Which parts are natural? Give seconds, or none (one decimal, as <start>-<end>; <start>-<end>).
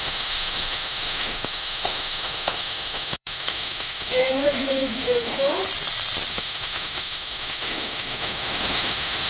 5.6-6.3